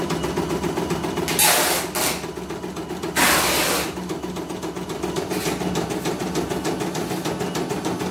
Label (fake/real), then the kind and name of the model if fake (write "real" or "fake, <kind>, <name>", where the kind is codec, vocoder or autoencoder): real